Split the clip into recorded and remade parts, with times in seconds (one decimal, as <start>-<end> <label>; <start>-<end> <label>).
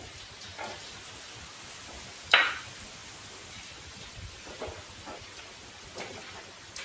0.0-6.8 recorded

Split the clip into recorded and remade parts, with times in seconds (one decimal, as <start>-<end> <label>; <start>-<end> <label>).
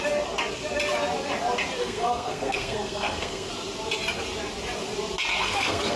0.0-1.8 recorded; 1.8-3.5 remade; 3.5-5.4 recorded; 5.4-6.0 remade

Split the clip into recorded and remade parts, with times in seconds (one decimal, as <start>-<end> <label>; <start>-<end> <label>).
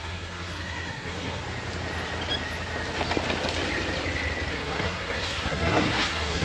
0.0-1.4 remade; 1.4-4.5 recorded; 4.5-6.4 remade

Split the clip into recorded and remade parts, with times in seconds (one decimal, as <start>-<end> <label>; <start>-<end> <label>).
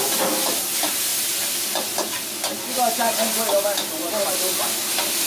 0.0-5.3 recorded